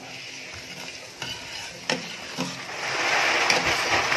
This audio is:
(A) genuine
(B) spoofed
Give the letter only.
A